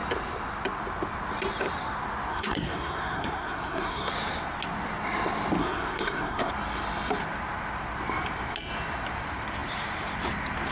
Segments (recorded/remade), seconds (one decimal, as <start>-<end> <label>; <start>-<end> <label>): 0.0-2.3 recorded; 2.3-4.1 remade; 4.1-5.6 recorded; 5.6-6.5 remade; 6.5-10.7 recorded